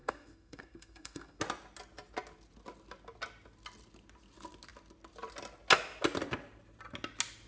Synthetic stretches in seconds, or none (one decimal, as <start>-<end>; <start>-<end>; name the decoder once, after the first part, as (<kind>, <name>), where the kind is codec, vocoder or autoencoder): 0.0-1.4 (codec, SNAC)